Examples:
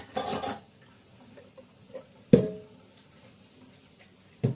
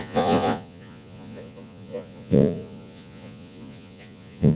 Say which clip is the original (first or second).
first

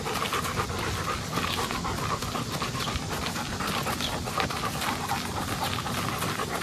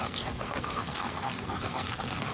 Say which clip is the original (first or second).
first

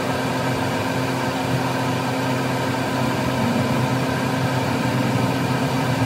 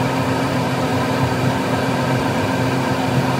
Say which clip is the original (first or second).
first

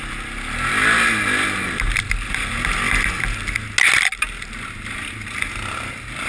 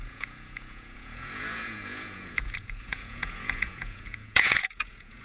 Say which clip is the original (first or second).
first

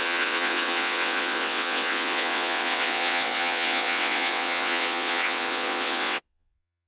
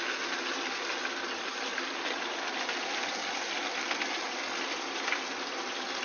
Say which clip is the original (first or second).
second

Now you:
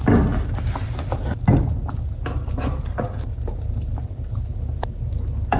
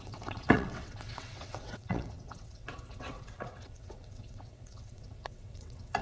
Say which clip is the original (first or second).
first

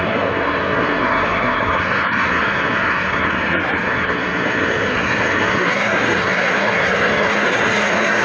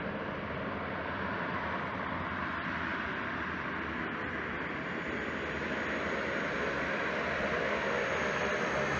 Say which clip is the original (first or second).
second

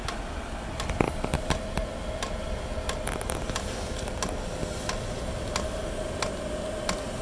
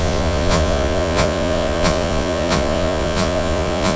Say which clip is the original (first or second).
first